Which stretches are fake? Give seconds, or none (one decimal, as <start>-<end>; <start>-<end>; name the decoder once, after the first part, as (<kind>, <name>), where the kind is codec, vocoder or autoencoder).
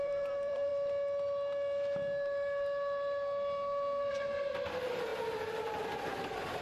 0.0-0.7 (vocoder, BigVGAN v2); 4.1-5.1